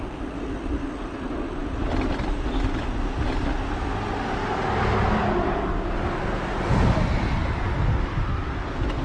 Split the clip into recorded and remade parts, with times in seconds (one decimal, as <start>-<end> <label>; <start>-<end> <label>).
0.0-9.0 recorded